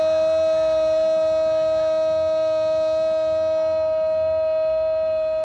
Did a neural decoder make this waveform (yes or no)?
no